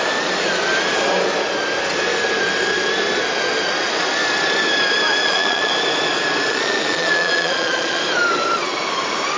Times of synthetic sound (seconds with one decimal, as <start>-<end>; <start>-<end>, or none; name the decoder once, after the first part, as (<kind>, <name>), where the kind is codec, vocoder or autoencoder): 5.2-5.7 (vocoder, Vocos); 6.5-8.0